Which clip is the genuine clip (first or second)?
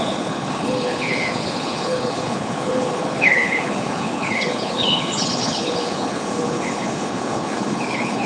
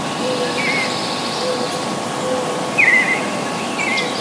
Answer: second